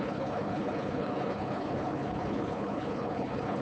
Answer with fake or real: fake